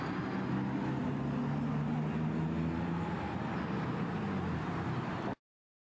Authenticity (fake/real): real